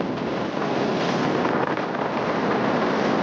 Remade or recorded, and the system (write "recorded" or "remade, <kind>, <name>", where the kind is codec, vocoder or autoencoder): recorded